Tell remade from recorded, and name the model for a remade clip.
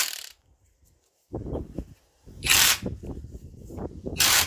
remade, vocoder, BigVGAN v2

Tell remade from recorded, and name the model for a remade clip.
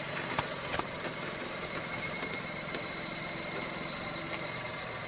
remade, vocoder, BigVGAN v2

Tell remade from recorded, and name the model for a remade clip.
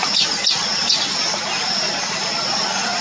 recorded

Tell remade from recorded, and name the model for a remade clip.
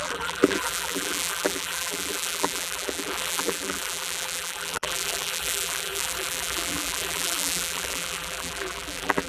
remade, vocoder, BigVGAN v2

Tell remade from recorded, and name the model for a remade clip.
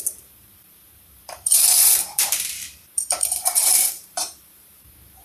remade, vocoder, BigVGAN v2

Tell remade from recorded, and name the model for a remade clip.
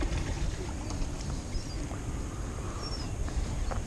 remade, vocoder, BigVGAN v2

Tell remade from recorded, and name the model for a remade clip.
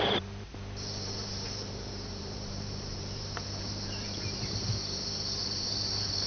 remade, vocoder, BigVGAN v2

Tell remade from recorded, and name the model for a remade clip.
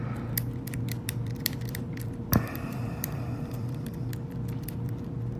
remade, vocoder, BigVGAN v2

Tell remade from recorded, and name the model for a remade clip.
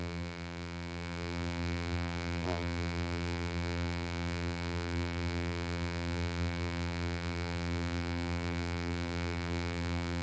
remade, vocoder, BigVGAN v2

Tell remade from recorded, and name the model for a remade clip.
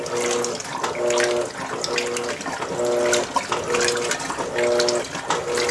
recorded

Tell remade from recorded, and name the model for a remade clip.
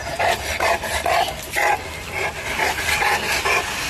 recorded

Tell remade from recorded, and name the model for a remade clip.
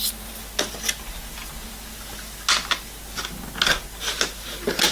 recorded